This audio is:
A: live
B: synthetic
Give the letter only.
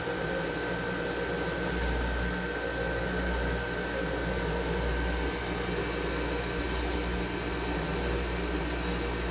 A